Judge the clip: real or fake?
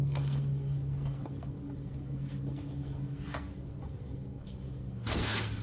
fake